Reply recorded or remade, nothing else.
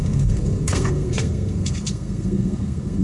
remade